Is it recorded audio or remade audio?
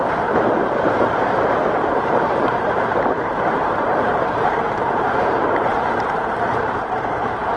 remade